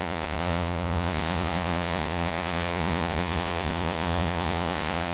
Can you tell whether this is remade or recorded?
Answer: remade